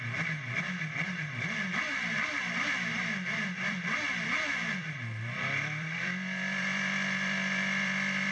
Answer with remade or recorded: remade